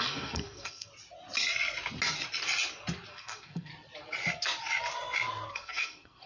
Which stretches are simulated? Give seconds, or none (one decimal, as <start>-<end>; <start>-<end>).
0.0-0.9; 3.1-3.7; 5.5-6.3